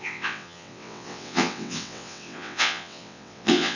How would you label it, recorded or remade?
remade